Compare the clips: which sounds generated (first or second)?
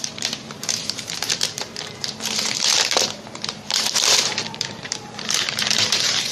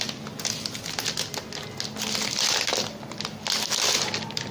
first